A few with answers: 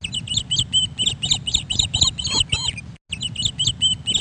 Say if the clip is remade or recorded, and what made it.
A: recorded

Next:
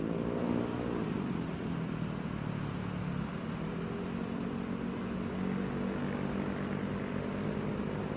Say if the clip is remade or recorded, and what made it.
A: recorded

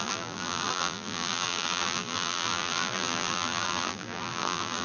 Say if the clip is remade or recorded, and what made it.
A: remade, vocoder, BigVGAN v2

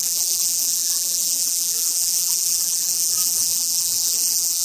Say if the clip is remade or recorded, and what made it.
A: remade, vocoder, BigVGAN v2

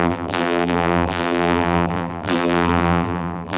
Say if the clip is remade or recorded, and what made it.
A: remade, vocoder, BigVGAN v2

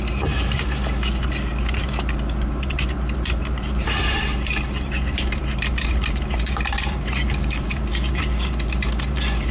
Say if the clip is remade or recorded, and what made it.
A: remade, vocoder, BigVGAN v2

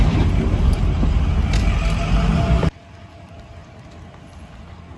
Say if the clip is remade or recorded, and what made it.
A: recorded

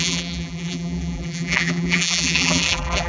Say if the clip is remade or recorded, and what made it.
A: remade, vocoder, BigVGAN v2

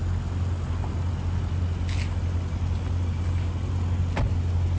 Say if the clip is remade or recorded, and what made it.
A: recorded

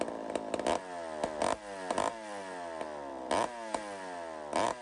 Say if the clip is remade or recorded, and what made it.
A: recorded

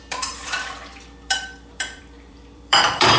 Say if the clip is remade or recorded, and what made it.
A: remade, vocoder, BigVGAN v2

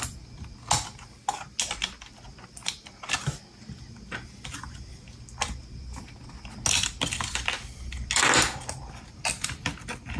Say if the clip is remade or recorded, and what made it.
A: recorded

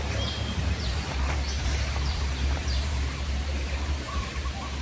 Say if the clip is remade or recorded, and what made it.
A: remade, vocoder, BigVGAN v2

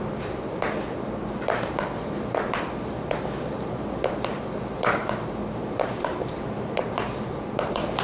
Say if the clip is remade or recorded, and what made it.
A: remade, vocoder, BigVGAN v2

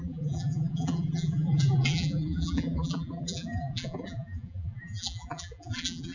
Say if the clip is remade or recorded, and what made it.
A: remade, vocoder, BigVGAN v2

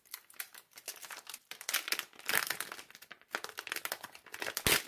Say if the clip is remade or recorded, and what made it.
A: recorded